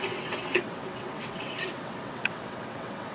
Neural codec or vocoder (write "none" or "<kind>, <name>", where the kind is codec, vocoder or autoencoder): vocoder, WaveNeXt